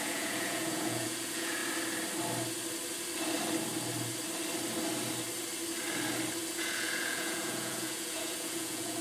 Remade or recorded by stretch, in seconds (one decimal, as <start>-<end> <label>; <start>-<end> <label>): 0.0-1.6 remade; 1.6-6.5 recorded; 6.5-9.0 remade